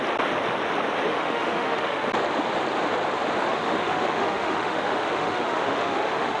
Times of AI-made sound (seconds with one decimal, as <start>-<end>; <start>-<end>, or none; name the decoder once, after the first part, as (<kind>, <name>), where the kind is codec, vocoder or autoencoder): 1.1-2.1 (autoencoder, DAC-VAE); 3.5-6.4